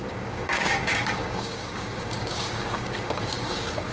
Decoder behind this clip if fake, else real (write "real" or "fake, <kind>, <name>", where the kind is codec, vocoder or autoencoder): fake, codec, DAC